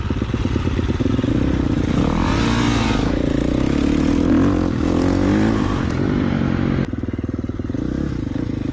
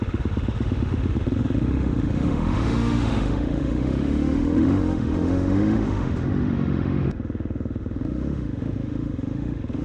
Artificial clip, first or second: second